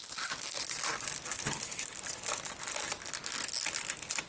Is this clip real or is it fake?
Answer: real